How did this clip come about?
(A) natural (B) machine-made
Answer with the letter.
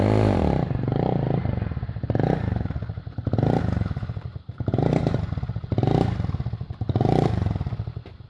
B